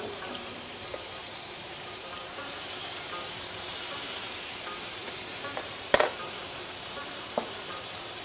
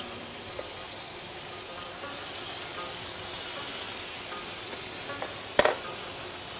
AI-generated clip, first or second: first